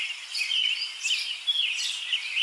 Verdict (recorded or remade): recorded